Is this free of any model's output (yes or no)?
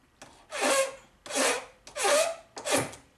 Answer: yes